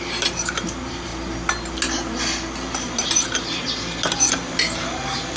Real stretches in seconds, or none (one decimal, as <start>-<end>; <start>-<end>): 1.1-4.3

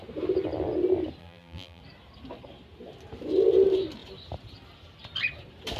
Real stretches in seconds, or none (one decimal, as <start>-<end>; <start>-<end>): 0.0-1.2; 1.8-5.8